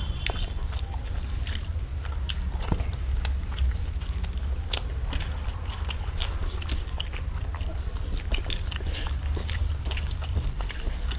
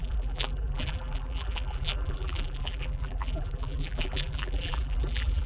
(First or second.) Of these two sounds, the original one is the first